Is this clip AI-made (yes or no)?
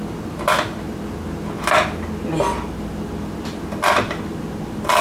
no